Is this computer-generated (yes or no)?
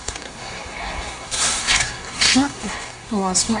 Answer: yes